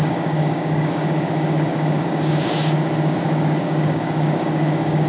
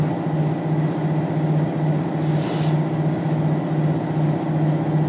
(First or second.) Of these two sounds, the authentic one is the second